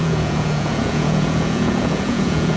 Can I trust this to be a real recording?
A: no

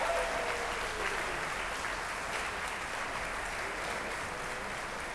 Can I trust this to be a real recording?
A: yes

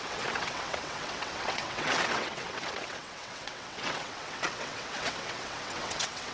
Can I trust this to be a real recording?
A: no